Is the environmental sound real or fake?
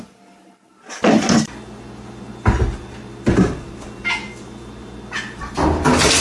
real